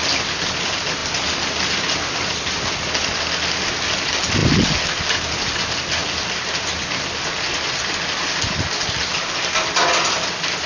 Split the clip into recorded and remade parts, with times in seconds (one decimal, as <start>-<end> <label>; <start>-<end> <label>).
0.0-10.7 recorded